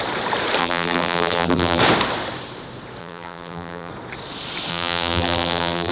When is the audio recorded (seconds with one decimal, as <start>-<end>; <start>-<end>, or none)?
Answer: 0.0-0.6; 1.8-3.0; 3.9-4.7